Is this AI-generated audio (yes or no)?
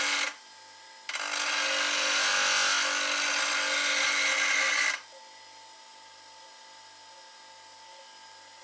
no